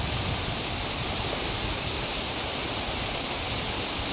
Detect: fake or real real